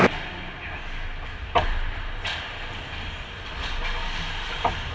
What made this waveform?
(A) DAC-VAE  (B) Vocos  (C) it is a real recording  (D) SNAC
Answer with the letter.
C